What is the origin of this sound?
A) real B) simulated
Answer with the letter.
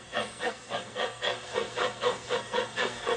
B